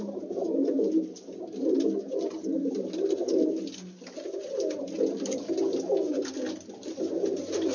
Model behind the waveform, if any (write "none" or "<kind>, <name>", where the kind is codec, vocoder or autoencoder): none